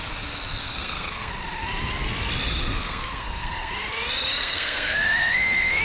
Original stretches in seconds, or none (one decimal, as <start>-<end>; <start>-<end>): 0.0-0.6; 1.3-2.7; 3.7-4.4